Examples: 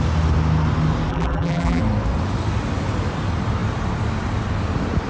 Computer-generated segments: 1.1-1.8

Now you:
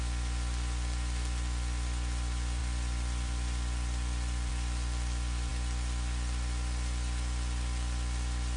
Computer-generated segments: 2.6-4.5

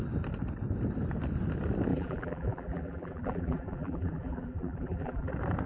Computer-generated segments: 1.9-5.3

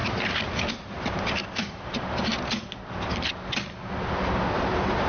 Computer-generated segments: 0.7-1.4; 4.5-5.1

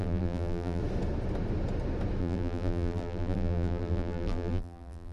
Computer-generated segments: 0.0-0.8; 2.2-5.1